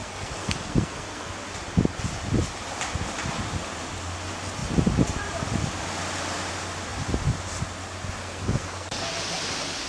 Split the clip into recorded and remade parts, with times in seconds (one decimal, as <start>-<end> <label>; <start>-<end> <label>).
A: 0.0-1.3 remade; 1.3-8.2 recorded; 8.2-9.1 remade; 9.1-9.9 recorded